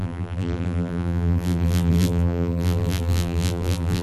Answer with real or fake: fake